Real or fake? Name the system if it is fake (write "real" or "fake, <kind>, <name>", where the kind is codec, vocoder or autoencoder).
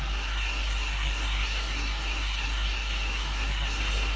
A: fake, codec, SNAC